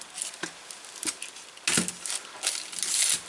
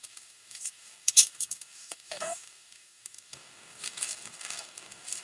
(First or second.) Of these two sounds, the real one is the first